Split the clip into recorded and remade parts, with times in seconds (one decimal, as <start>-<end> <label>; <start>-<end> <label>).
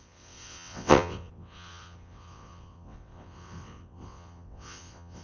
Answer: 0.0-5.2 remade